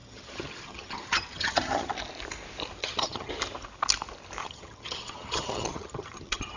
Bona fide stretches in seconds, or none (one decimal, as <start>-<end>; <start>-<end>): 1.9-2.8; 3.3-4.4